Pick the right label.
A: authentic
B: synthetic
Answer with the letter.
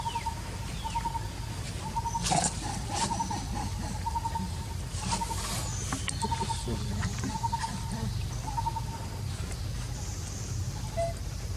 B